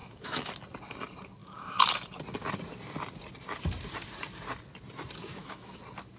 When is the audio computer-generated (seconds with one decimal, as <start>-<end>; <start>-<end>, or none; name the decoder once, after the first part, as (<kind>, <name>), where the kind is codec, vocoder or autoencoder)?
0.0-0.5 (autoencoder, DAC-VAE); 1.4-1.9; 5.2-5.8